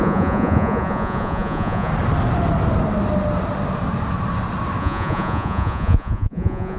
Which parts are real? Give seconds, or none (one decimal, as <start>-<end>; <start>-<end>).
1.9-4.8